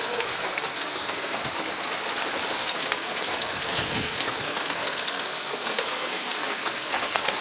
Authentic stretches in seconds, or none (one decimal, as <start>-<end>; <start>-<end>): 1.4-2.6